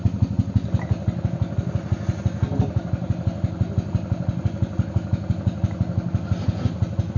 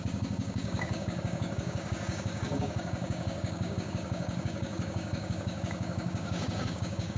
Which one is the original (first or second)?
first